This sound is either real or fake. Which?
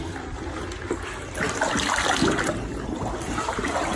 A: fake